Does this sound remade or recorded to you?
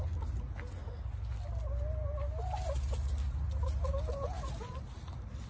recorded